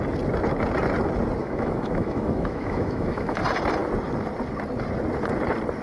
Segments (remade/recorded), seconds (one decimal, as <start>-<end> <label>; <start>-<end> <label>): 0.0-1.4 recorded; 1.4-3.4 remade; 3.4-5.8 recorded